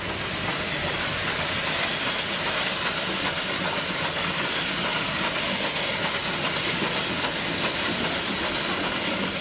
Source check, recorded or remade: recorded